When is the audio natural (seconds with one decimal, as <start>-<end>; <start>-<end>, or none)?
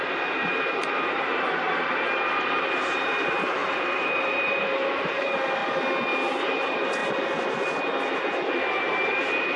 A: 5.6-6.3; 7.0-8.8